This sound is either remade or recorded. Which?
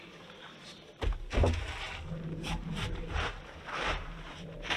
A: remade